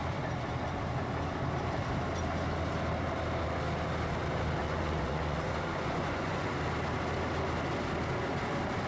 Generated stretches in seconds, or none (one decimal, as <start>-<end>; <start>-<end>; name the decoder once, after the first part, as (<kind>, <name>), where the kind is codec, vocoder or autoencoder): 4.6-6.5 (vocoder, Vocos)